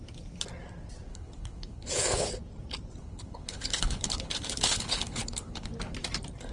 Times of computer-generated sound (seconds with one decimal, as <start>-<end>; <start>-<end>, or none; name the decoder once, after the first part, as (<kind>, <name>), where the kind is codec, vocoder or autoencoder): 1.1-2.3 (codec, HILCodec); 3.0-5.7